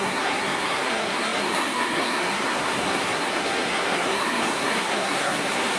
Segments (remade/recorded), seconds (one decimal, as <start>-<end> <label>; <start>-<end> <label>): 0.0-5.8 remade